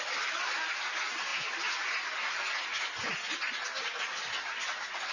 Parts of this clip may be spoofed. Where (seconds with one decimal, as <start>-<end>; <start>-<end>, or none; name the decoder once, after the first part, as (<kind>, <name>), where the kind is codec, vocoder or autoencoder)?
none